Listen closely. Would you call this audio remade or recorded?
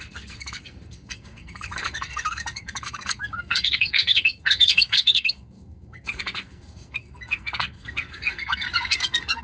remade